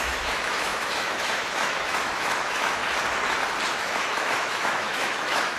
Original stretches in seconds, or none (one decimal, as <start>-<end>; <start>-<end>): 2.8-3.7